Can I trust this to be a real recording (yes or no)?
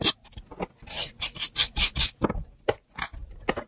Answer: yes